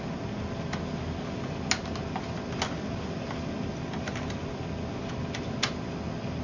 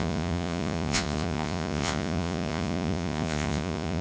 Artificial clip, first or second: second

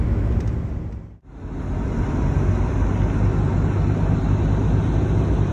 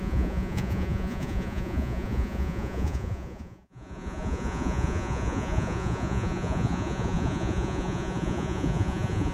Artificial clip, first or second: second